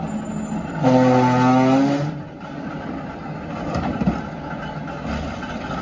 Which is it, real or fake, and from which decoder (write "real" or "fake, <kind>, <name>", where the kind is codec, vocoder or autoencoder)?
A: real